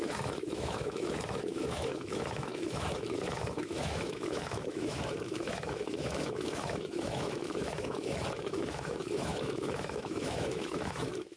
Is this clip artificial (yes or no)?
yes